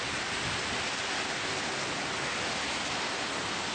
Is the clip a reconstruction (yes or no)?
no